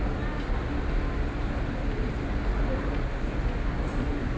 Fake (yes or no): no